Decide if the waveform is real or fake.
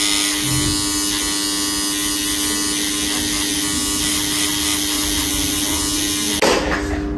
real